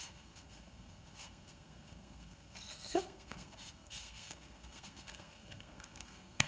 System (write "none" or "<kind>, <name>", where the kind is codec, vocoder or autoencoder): codec, SNAC